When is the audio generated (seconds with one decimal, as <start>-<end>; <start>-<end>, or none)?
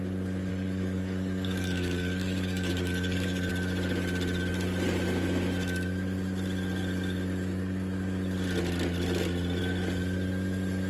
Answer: 0.5-3.5